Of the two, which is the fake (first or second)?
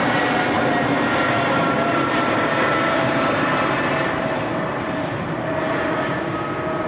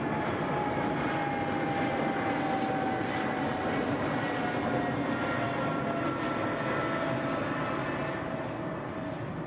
first